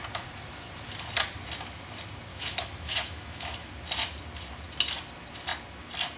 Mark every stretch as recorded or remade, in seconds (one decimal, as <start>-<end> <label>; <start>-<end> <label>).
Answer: 0.0-2.3 recorded; 2.3-3.7 remade; 3.7-6.2 recorded